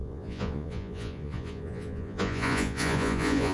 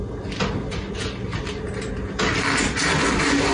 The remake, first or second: first